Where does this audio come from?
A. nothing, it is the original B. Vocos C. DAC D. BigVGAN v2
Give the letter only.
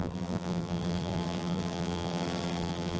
D